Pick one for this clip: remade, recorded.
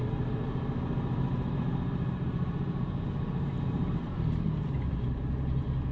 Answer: remade